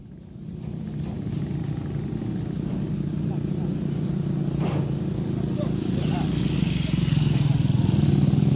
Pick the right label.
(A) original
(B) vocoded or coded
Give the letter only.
A